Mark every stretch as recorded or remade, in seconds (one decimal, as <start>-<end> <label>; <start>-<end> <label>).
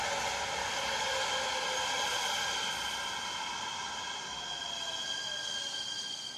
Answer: 0.0-6.4 recorded